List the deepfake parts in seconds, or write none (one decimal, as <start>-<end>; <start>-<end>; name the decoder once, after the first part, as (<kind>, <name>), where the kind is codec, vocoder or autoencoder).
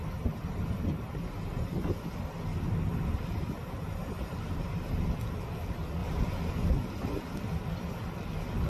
3.6-4.8 (vocoder, BigVGAN v2); 6.0-6.7